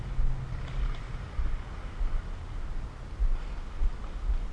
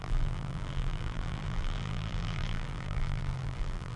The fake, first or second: second